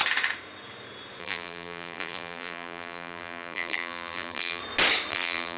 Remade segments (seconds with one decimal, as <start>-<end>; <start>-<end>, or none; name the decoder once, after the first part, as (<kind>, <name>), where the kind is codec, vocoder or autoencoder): 1.2-4.6 (vocoder, BigVGAN v2); 5.1-5.6